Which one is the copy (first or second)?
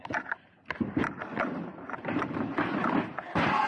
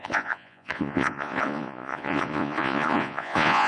second